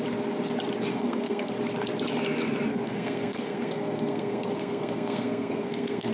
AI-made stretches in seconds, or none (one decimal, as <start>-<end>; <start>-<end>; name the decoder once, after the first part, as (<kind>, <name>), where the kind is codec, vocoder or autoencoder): 0.9-1.5 (codec, SNAC); 2.7-6.1